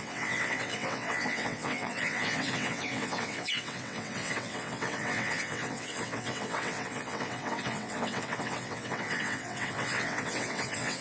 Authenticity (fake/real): fake